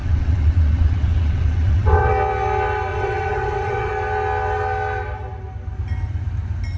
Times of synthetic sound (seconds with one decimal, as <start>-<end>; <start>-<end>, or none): 0.0-2.1; 2.9-3.9